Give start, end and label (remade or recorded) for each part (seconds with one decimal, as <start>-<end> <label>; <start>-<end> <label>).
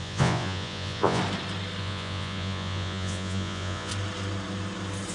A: 0.0-1.2 remade; 1.2-1.8 recorded; 1.8-3.9 remade; 3.9-5.1 recorded